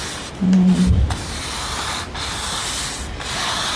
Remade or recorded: recorded